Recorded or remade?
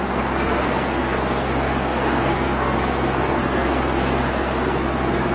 remade